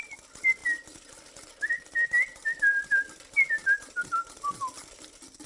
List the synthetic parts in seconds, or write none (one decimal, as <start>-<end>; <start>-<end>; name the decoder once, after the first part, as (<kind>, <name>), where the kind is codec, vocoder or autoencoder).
none